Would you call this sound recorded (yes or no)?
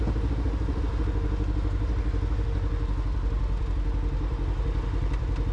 yes